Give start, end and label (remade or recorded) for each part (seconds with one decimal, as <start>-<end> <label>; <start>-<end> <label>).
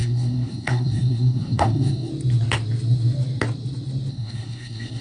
0.0-2.1 remade; 2.1-4.1 recorded; 4.1-5.0 remade